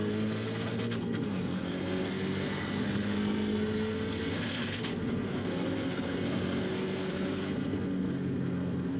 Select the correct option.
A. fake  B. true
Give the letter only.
A